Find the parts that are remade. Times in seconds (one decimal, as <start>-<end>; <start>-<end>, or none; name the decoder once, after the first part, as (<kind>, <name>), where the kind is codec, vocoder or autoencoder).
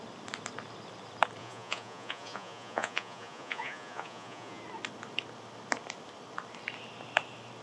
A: 1.4-4.6 (vocoder, Vocos)